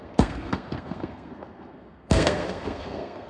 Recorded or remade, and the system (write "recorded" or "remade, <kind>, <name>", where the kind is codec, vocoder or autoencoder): remade, codec, SNAC